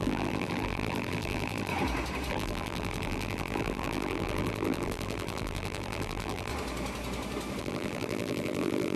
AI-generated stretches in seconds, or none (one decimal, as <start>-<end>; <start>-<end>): 0.0-1.7; 2.3-6.5; 7.6-9.0